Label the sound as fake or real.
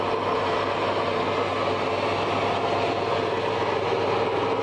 real